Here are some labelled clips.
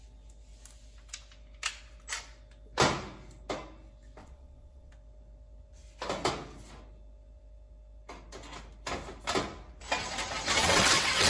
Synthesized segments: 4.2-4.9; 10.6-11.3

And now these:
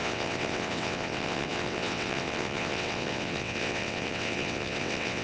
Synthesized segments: 0.0-5.2

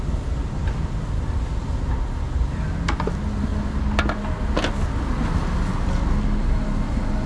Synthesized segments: none